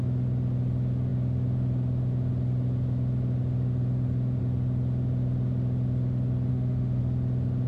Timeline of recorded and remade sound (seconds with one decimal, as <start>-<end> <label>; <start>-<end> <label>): 0.0-6.5 recorded; 6.5-7.0 remade; 7.0-7.7 recorded